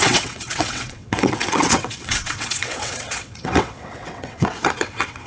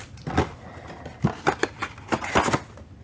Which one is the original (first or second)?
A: second